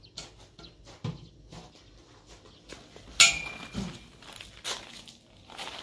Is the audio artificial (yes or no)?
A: no